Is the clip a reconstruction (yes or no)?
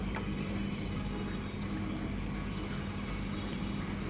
no